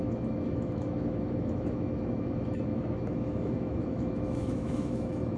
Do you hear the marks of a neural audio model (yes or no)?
yes